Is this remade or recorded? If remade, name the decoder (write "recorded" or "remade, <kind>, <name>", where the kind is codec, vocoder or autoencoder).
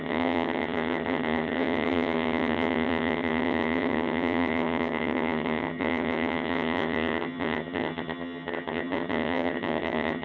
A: remade, vocoder, HiFi-GAN